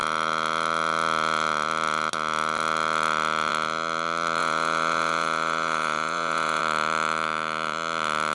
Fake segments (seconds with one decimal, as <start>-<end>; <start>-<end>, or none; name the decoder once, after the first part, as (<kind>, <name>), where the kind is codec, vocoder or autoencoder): 4.4-6.6 (vocoder, Vocos)